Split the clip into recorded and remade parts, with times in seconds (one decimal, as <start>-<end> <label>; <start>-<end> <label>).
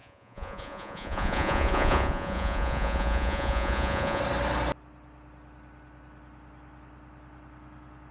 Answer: 0.0-4.2 remade; 4.2-8.1 recorded